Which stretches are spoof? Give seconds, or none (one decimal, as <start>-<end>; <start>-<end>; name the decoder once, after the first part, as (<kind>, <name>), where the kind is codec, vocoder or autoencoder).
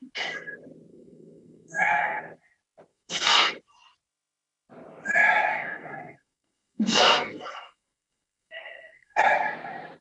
0.9-2.2 (codec, SNAC); 2.9-3.5; 5.5-9.2